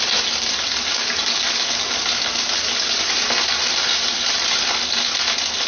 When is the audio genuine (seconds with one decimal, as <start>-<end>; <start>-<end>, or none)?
0.0-0.9; 2.0-5.7